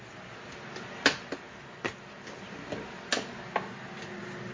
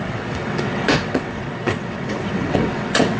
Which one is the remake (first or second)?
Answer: second